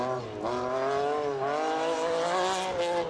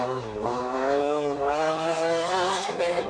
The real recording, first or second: first